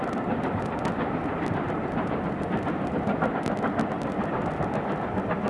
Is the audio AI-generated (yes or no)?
no